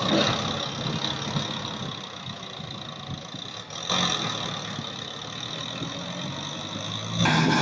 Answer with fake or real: real